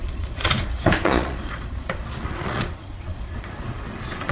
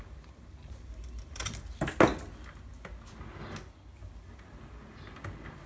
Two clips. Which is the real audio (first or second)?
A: second